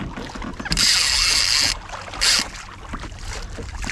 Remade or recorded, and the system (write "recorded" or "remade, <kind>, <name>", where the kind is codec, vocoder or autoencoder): recorded